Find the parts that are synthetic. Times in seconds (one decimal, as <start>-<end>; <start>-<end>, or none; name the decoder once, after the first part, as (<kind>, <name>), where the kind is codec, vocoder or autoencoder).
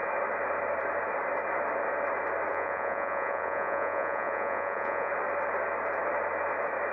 2.5-5.1 (vocoder, Vocos)